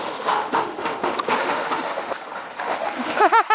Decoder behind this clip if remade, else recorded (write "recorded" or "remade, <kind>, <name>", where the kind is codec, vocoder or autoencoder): remade, autoencoder, DAC-VAE